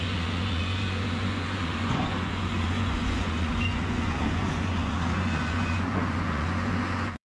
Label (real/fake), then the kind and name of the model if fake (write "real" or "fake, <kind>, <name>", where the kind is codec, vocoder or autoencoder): fake, vocoder, Vocos